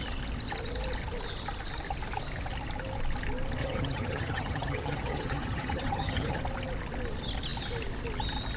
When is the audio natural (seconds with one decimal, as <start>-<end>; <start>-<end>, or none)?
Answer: 0.0-3.6; 6.4-8.6